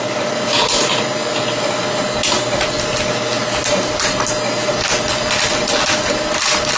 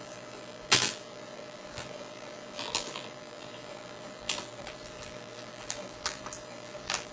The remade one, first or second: second